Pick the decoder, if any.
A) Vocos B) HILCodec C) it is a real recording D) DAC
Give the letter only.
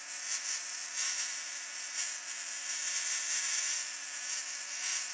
C